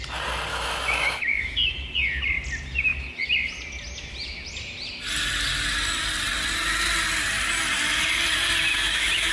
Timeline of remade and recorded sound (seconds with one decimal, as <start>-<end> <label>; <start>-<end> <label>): 0.0-0.5 recorded; 0.5-1.7 remade; 1.7-8.7 recorded; 8.7-9.3 remade

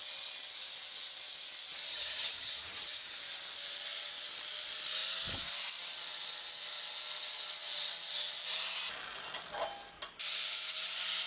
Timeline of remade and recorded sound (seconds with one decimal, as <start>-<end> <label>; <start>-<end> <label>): 0.0-1.9 recorded; 1.9-3.2 remade; 3.2-11.3 recorded

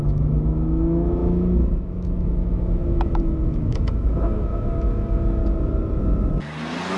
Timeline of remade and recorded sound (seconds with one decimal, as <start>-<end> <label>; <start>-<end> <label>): 0.0-5.4 remade; 5.4-7.0 recorded

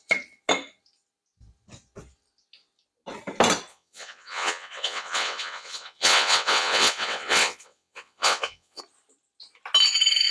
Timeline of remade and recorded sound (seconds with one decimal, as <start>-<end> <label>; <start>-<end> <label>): 0.0-3.7 recorded; 3.7-8.8 remade; 8.8-10.3 recorded

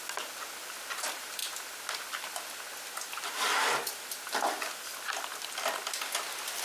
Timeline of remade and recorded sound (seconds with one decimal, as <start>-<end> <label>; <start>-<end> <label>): 0.0-6.6 recorded